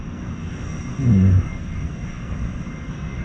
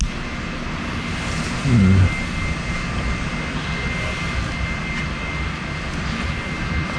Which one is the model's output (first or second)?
first